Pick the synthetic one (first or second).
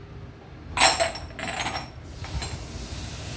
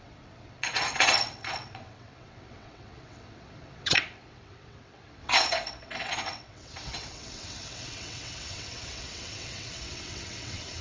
second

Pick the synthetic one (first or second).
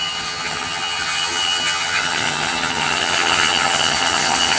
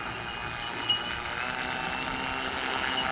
first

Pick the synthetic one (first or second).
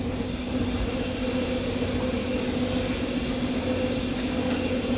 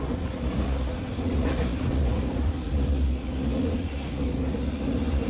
second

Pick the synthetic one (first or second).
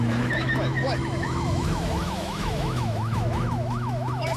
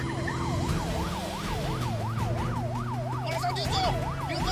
first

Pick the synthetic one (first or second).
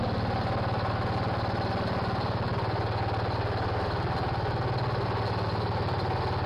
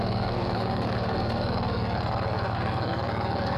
second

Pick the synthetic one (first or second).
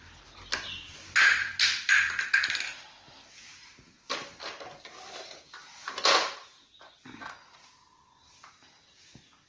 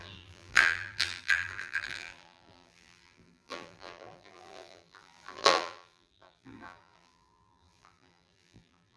second